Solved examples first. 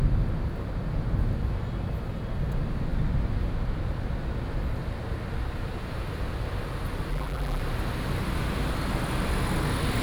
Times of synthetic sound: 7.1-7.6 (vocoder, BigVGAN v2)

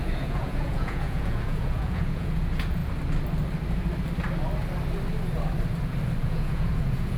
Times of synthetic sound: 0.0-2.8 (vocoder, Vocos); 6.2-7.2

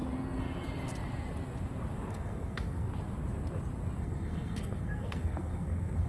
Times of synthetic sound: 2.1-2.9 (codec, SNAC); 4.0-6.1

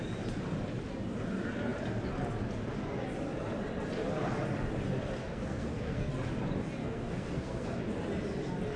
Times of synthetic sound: 5.2-6.1 (codec, SNAC); 6.8-7.8

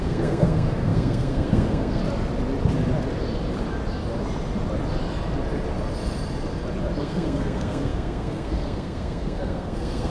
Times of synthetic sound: 0.0-2.0 (codec, SNAC); 7.0-10.1